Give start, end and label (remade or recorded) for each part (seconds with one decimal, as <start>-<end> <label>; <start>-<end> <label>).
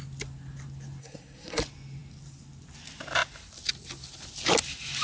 0.0-1.0 recorded; 1.0-1.6 remade; 1.6-5.0 recorded